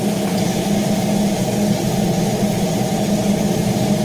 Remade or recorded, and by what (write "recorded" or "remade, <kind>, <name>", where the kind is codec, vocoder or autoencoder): recorded